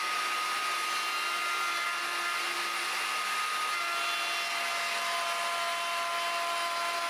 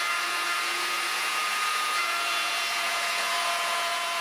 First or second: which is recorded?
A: first